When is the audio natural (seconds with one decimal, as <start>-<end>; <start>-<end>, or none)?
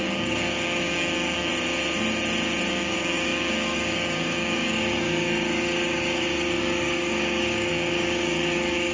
1.5-2.7